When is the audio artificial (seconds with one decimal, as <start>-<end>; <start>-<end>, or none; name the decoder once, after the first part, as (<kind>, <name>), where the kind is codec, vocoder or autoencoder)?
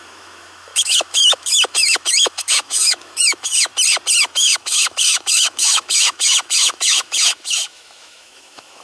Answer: 0.0-3.7 (autoencoder, DAC-VAE); 4.2-8.8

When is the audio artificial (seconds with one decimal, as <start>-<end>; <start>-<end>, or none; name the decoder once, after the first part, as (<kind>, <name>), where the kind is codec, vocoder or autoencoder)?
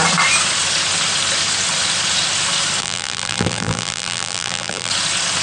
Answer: 2.8-4.9 (vocoder, BigVGAN v2)